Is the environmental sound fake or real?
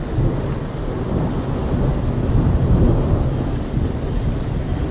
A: real